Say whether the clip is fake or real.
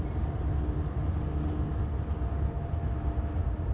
real